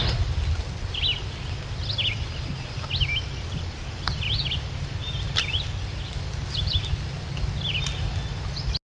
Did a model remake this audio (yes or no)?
no